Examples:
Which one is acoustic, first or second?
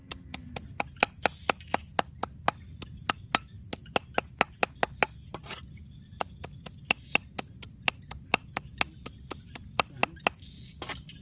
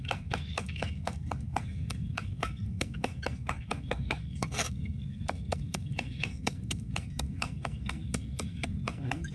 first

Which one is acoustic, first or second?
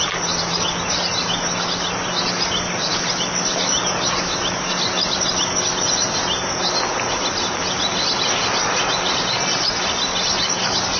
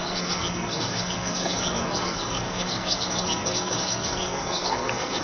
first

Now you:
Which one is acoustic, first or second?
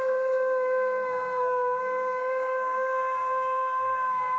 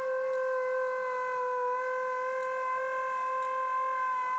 second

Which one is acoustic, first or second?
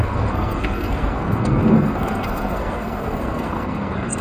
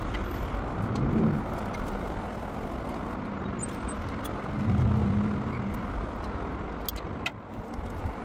second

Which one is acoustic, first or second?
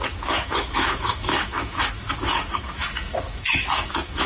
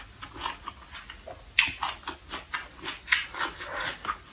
second